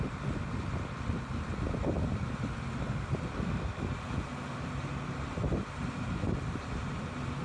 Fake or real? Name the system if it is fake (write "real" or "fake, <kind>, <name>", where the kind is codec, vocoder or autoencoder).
real